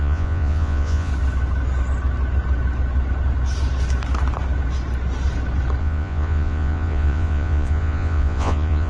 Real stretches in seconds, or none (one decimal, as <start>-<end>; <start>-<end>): 1.1-5.8